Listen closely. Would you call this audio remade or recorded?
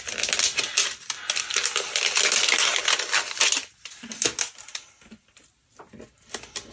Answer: recorded